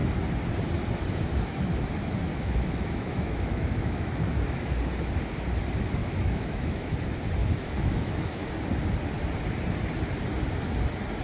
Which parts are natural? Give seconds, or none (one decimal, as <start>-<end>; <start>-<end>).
0.0-2.3; 4.7-6.0; 6.9-7.4; 8.5-11.2